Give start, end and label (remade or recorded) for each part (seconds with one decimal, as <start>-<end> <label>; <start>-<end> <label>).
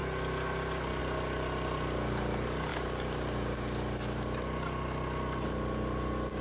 0.0-6.4 recorded